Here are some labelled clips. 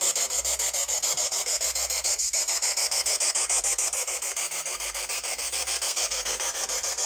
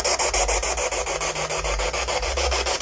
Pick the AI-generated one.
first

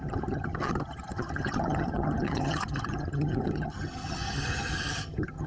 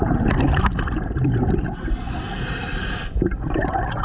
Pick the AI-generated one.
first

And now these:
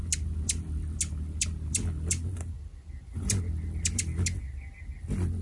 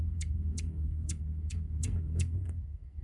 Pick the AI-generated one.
second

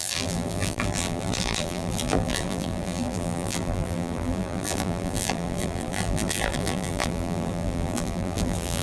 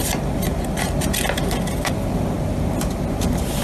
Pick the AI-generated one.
first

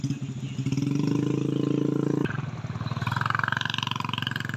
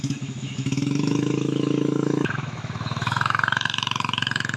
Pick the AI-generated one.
second